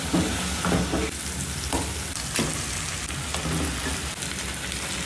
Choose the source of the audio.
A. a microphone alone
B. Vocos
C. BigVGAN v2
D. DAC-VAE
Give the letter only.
A